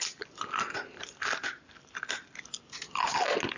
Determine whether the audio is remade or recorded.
recorded